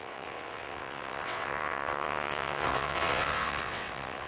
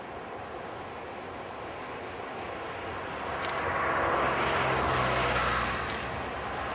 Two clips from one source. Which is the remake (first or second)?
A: first